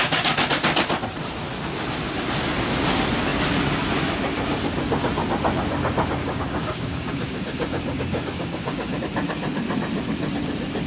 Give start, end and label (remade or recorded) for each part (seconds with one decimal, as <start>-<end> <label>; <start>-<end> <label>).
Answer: 0.0-6.2 recorded; 6.2-9.0 remade; 9.0-10.9 recorded